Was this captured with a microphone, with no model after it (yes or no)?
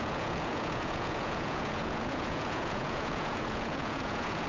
no